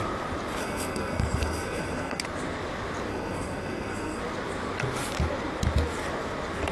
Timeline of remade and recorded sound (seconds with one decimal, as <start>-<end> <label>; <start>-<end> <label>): 0.0-0.6 recorded; 0.6-2.2 remade; 2.2-3.1 recorded; 3.1-4.2 remade; 4.2-6.7 recorded